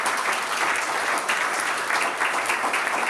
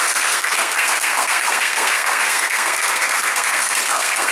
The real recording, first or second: first